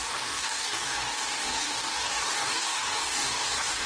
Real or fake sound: fake